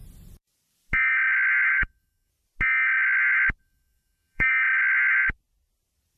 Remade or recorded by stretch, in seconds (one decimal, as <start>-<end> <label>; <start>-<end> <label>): 0.0-1.7 recorded; 1.7-2.3 remade; 2.3-3.6 recorded; 3.6-4.5 remade; 4.5-6.2 recorded